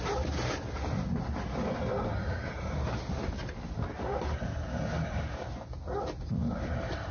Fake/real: real